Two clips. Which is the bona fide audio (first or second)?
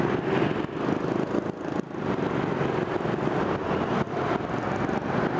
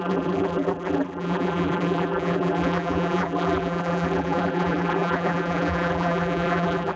first